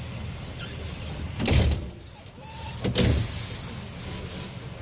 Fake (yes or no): no